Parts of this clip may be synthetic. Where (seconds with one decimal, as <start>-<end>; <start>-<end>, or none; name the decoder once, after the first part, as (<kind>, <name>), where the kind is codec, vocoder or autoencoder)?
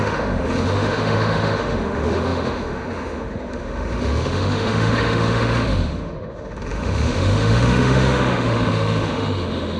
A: 0.0-9.8 (autoencoder, DAC-VAE)